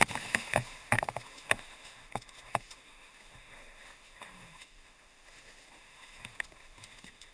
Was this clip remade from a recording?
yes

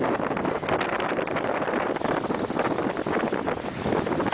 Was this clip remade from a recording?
no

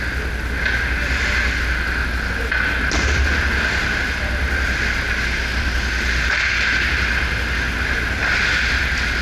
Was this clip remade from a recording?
no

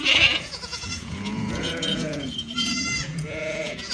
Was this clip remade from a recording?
yes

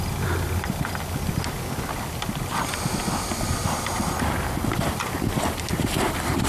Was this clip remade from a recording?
no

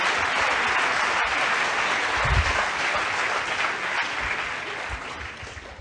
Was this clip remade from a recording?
no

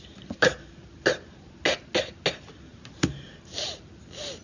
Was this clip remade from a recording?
no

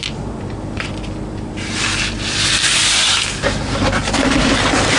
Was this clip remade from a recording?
yes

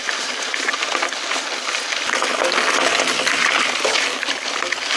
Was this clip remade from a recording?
no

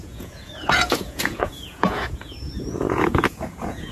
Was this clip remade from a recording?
yes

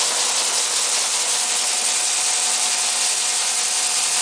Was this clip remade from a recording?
no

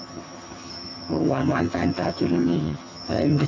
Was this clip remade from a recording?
yes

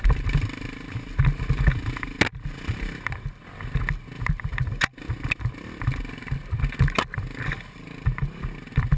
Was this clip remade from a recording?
no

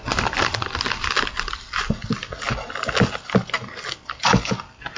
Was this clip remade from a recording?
no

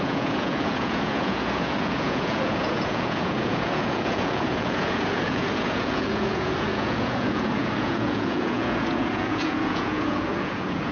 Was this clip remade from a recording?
yes